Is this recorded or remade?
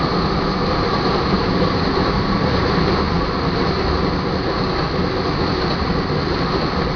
recorded